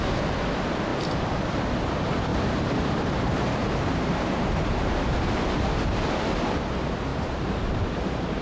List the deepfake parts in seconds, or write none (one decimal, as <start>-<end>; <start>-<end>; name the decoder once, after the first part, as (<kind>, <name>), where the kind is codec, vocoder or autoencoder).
2.3-5.2 (vocoder, BigVGAN v2); 7.1-8.4